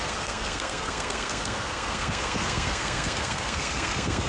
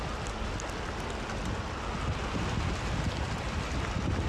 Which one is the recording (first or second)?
second